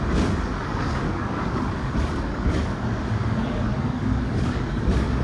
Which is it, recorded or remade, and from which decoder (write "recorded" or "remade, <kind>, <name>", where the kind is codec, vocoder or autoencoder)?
remade, codec, DAC